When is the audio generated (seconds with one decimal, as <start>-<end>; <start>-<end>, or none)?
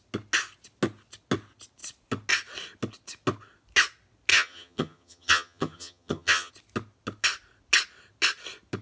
4.3-6.5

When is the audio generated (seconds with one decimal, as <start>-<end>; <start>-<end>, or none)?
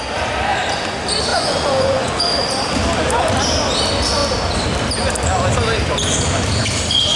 1.3-2.2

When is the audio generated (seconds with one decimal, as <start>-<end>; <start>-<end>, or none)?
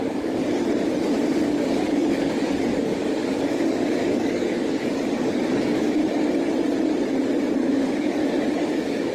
0.0-0.4; 1.4-6.0; 7.5-8.2; 8.7-9.1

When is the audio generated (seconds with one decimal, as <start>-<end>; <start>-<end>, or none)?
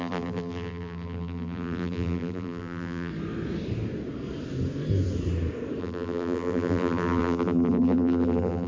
0.0-3.1; 5.8-8.7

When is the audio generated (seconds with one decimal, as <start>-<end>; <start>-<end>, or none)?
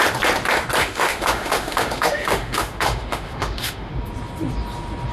0.8-3.9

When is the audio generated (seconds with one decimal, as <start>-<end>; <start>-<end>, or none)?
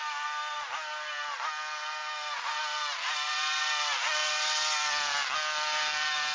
none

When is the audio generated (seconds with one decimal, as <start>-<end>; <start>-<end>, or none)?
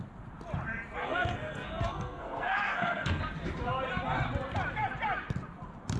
1.0-3.2